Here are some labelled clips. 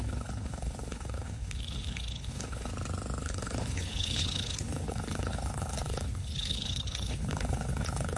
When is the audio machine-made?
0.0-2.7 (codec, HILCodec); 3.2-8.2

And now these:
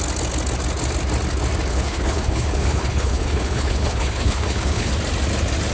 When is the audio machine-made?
1.7-4.9 (codec, HILCodec)

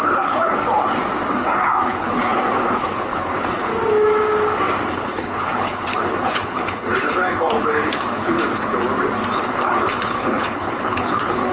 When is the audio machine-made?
0.0-0.6 (codec, HILCodec); 1.3-3.7; 4.9-8.8; 9.3-11.5

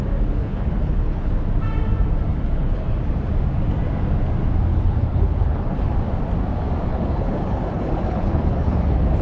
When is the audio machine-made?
0.4-1.3 (codec, HILCodec); 2.3-2.8; 4.7-5.9; 6.9-9.2

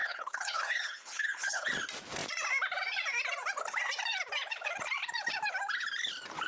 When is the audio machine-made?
0.0-1.7 (codec, HILCodec)